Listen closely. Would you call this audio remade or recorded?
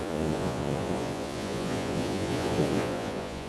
remade